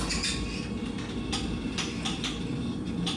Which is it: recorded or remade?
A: recorded